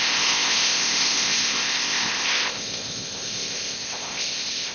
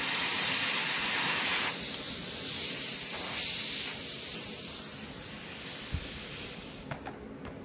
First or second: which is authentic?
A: second